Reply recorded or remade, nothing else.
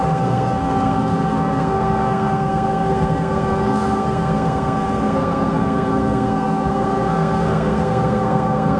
remade